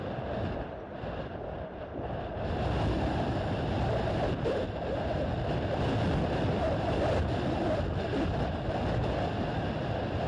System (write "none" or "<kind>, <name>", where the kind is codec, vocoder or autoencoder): none